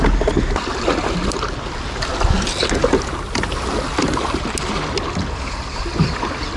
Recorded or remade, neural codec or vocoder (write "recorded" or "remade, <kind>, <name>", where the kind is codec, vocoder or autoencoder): recorded